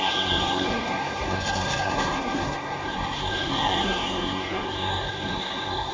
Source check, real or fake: fake